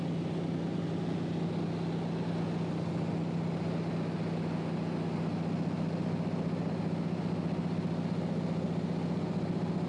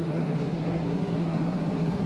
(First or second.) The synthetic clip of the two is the second